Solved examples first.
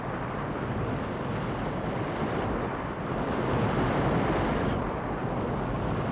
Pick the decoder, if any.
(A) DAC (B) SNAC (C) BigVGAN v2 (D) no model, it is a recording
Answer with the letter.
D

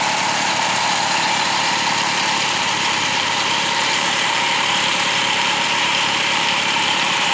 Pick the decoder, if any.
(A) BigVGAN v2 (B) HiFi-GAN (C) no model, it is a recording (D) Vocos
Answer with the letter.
A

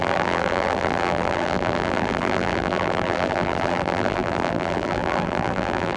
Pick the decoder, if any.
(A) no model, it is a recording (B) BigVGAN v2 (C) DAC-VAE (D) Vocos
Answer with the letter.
B